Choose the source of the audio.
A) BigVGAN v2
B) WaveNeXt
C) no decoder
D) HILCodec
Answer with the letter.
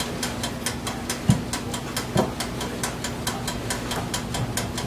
C